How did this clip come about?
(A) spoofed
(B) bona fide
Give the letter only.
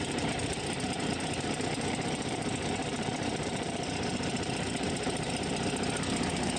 A